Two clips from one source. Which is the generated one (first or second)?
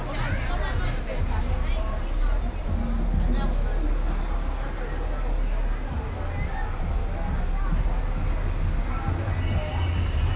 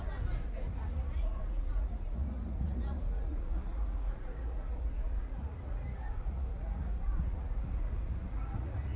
second